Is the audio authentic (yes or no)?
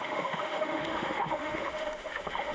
no